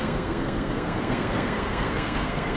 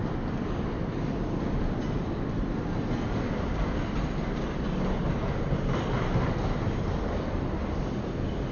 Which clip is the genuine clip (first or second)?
second